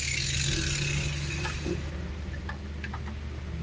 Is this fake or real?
real